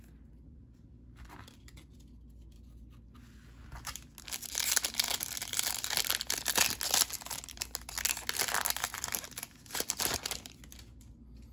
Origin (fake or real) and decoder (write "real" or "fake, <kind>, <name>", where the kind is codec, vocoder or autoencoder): real